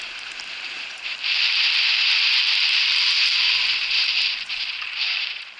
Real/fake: fake